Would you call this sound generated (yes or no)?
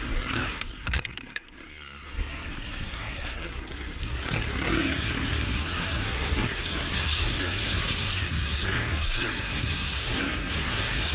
yes